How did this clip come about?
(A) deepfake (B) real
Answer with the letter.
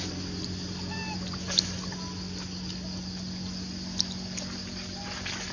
B